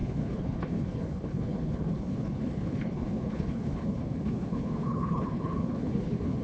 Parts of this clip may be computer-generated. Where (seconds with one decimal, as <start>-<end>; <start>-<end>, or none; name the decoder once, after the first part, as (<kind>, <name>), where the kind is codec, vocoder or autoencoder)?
0.0-6.4 (codec, HILCodec)